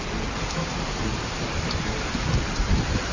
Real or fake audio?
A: fake